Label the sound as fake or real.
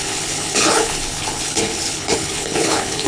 fake